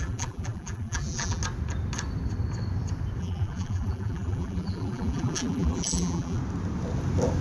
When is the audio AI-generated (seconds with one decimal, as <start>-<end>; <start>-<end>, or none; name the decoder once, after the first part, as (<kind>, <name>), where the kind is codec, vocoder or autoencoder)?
0.0-1.4 (vocoder, BigVGAN v2); 3.2-6.4